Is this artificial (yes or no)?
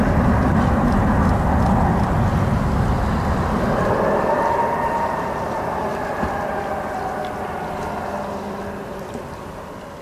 no